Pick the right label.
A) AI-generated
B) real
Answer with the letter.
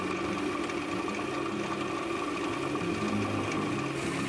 B